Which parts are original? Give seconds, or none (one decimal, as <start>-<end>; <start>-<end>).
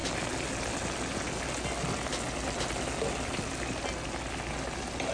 0.0-5.1